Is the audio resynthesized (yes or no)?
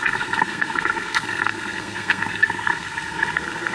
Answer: yes